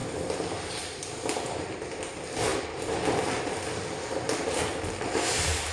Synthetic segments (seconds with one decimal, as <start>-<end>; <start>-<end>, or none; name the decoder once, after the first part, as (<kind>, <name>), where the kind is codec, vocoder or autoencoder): 0.0-1.9 (vocoder, BigVGAN v2)